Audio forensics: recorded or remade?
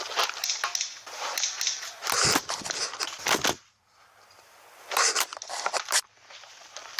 recorded